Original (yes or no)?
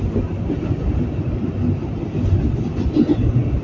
yes